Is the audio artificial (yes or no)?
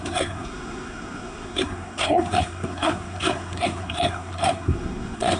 yes